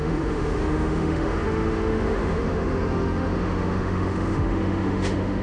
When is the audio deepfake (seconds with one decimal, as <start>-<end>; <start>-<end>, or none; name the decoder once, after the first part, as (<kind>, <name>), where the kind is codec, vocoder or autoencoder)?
0.0-5.4 (autoencoder, DAC-VAE)